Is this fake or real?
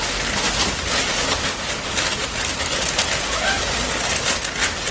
real